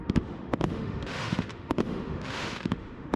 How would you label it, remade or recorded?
remade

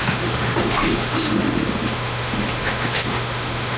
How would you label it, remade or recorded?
remade